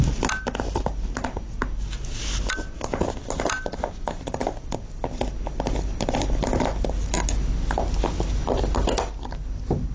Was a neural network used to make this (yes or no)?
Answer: no